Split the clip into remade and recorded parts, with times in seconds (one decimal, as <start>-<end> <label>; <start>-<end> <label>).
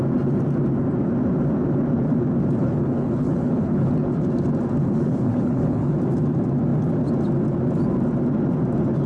0.0-2.6 recorded; 2.6-3.9 remade; 3.9-4.8 recorded; 4.8-5.9 remade; 5.9-9.1 recorded